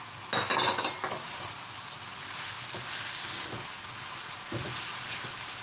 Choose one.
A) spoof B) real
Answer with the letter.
B